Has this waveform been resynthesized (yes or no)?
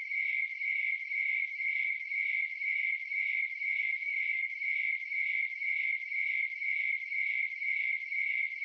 yes